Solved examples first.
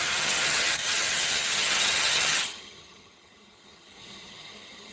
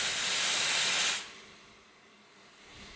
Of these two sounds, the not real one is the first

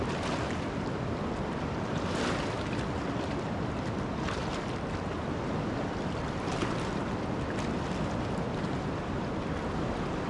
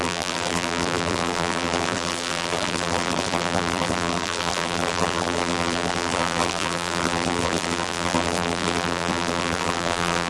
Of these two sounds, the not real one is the second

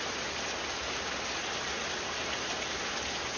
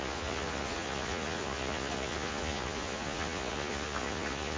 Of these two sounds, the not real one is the second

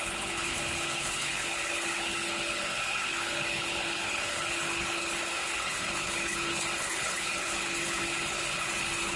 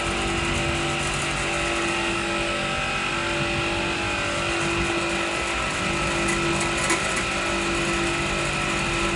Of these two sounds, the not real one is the first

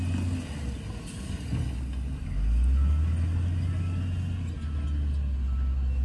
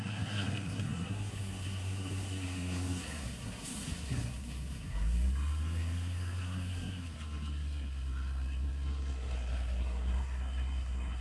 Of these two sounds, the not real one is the second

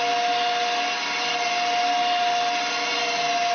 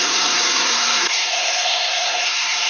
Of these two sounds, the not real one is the second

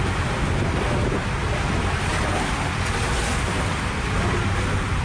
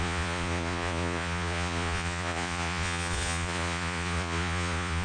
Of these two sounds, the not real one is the second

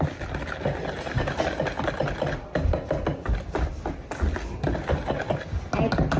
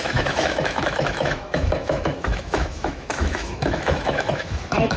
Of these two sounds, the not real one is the second